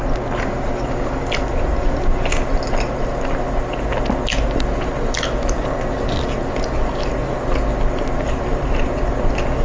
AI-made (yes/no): no